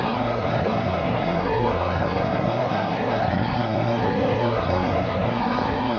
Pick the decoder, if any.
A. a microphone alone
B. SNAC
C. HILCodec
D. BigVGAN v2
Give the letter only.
B